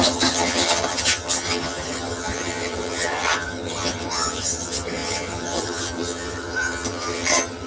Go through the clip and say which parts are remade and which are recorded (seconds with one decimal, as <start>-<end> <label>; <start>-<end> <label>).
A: 0.0-7.7 remade